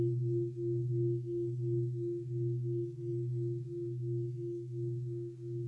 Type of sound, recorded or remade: remade